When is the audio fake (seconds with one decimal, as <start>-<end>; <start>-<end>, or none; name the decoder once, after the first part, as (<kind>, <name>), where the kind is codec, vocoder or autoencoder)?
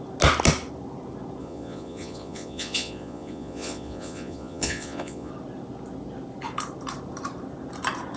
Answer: 1.4-5.3 (vocoder, Vocos)